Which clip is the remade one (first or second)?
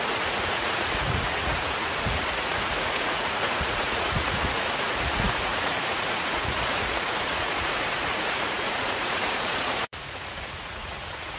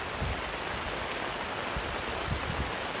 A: first